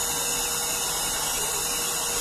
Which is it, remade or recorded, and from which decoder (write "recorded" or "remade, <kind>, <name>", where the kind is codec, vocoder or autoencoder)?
recorded